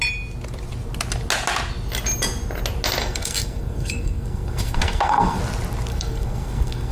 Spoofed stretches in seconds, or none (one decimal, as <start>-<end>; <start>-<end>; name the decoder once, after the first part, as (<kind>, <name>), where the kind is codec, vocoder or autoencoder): 3.0-5.4 (codec, SNAC); 5.9-6.9